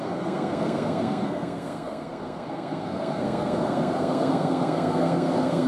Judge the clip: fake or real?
fake